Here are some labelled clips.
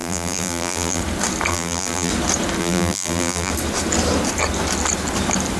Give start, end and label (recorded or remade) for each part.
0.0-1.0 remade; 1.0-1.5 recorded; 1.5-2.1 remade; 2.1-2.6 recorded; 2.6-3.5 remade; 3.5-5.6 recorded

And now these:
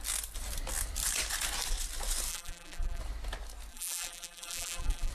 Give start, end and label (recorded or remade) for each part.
0.0-2.3 recorded; 2.3-3.0 remade; 3.0-3.7 recorded; 3.7-5.1 remade